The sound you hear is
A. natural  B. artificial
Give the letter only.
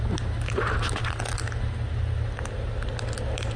A